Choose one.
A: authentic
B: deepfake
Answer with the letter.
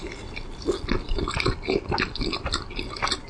A